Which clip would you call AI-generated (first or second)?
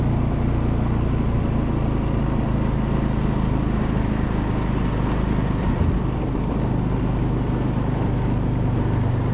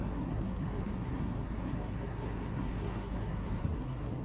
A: second